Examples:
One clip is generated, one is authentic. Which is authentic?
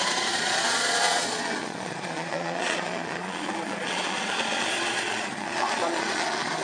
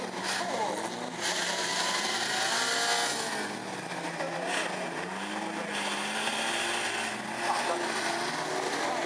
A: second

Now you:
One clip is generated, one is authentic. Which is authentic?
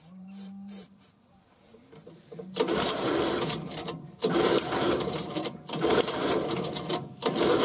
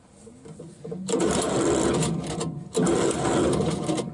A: second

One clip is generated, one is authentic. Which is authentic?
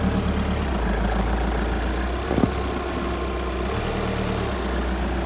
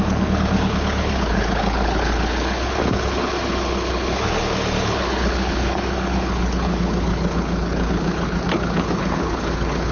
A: first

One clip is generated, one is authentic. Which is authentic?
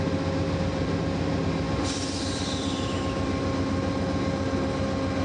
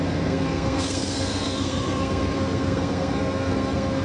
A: first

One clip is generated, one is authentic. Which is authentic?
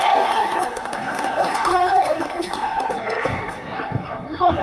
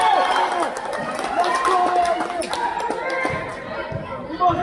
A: second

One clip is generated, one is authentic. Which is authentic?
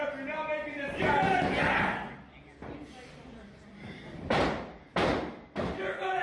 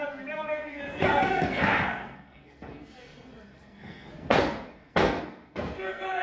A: first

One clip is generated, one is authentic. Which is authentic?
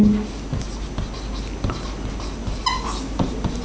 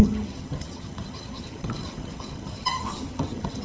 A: first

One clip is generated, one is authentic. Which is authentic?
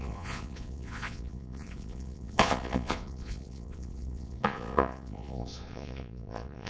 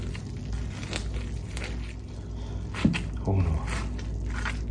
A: second